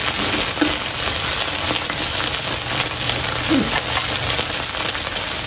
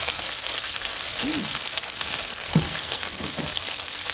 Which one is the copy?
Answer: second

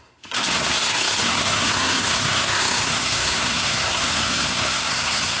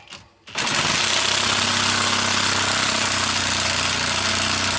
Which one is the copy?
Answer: first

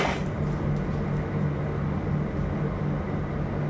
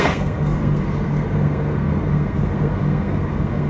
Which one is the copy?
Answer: second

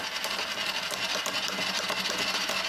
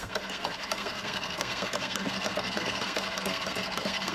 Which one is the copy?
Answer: second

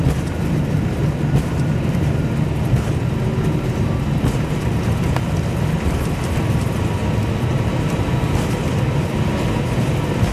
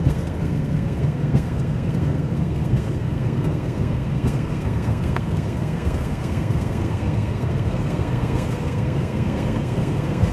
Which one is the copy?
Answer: second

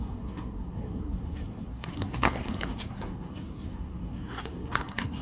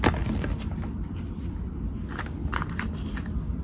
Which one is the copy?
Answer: first